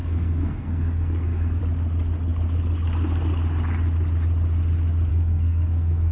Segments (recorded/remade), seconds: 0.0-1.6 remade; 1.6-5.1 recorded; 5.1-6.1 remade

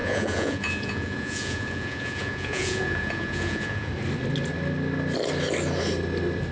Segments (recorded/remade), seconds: 0.0-3.9 remade; 3.9-6.5 recorded

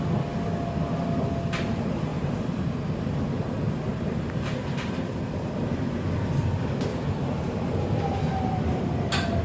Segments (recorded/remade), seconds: 0.0-2.1 recorded; 2.1-3.0 remade; 3.0-3.9 recorded; 3.9-5.3 remade; 5.3-6.9 recorded; 6.9-8.0 remade; 8.0-9.4 recorded

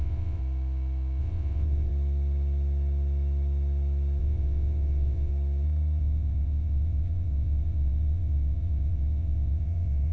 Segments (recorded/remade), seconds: 0.0-0.4 remade; 0.4-1.2 recorded; 1.2-1.9 remade; 1.9-4.2 recorded; 4.2-5.3 remade; 5.3-6.0 recorded; 6.0-10.1 remade

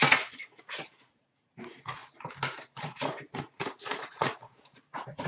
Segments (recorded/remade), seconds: 0.0-2.0 remade; 2.0-2.8 recorded; 2.8-5.3 remade